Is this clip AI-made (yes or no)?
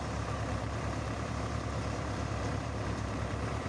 yes